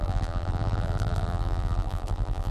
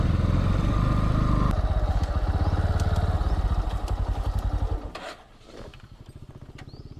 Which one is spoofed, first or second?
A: first